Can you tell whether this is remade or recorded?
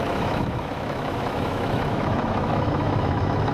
remade